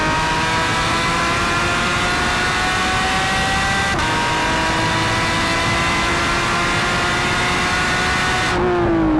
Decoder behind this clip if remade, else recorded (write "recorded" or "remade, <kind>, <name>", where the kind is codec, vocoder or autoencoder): recorded